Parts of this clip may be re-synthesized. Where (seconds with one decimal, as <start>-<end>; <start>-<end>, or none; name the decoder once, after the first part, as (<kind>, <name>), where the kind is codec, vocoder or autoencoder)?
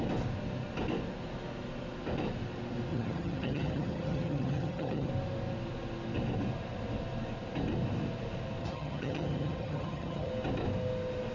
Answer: 2.9-5.1 (vocoder, HiFi-GAN); 8.6-10.3